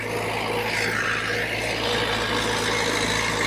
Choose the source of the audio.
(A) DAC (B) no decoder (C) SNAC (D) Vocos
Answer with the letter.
B